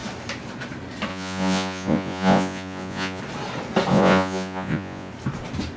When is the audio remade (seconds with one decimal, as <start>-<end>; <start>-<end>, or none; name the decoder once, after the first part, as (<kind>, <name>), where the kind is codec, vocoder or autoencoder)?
1.1-3.2 (vocoder, Vocos); 3.9-5.1